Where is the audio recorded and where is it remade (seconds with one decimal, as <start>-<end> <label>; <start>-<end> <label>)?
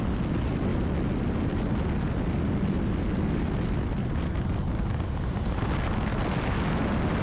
0.0-7.2 recorded